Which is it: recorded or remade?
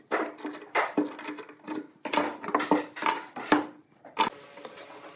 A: recorded